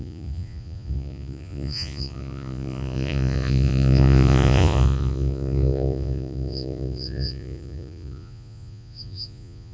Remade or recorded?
remade